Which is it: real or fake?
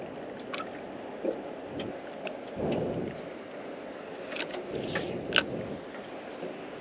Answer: real